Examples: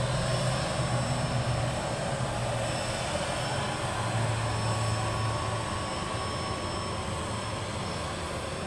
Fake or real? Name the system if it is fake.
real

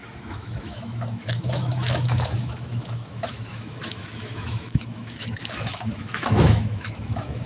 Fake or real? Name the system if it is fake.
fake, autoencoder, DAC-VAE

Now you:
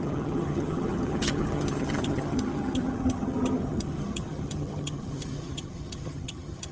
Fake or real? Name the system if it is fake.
fake, vocoder, HiFi-GAN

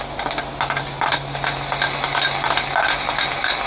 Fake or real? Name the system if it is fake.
real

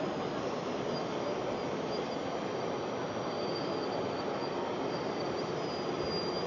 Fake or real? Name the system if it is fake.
real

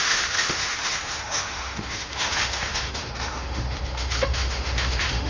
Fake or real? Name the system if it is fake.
fake, autoencoder, DAC-VAE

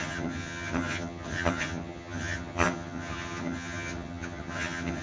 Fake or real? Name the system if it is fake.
fake, vocoder, HiFi-GAN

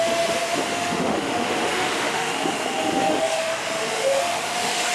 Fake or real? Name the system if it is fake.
fake, autoencoder, DAC-VAE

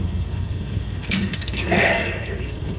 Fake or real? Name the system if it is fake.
fake, codec, SNAC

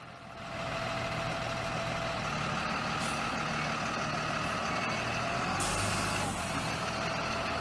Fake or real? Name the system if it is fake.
real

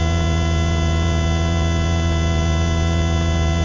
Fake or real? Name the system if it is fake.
real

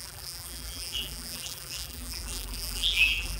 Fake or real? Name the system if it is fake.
fake, vocoder, BigVGAN v2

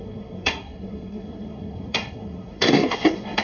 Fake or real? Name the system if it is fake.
fake, codec, SNAC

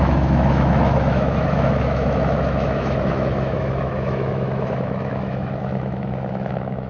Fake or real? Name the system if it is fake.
fake, autoencoder, DAC-VAE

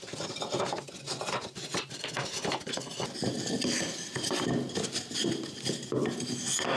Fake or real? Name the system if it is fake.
real